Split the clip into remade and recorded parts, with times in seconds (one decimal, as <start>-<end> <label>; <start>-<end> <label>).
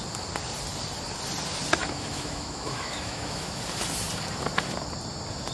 0.0-1.8 recorded; 1.8-3.6 remade; 3.6-5.5 recorded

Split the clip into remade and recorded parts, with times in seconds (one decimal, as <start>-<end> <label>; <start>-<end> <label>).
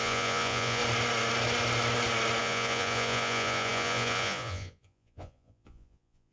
0.0-0.8 remade; 0.8-2.4 recorded; 2.4-6.3 remade